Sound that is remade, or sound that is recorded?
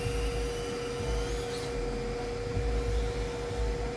recorded